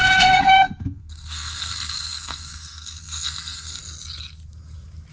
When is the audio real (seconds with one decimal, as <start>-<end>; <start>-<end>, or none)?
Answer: 3.8-5.1